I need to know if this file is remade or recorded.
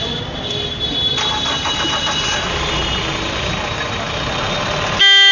recorded